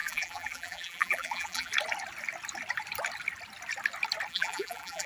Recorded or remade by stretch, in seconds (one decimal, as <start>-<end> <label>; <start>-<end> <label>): 0.0-1.7 remade; 1.7-4.3 recorded; 4.3-5.1 remade